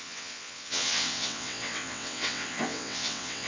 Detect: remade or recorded remade